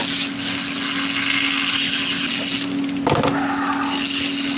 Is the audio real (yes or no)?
yes